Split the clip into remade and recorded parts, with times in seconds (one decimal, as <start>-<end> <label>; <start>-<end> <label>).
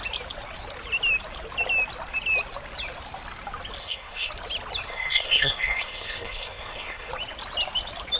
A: 0.0-3.8 recorded; 3.8-4.3 remade; 4.3-4.9 recorded; 4.9-7.1 remade; 7.1-8.2 recorded